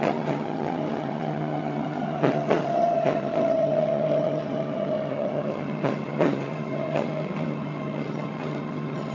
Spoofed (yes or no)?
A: yes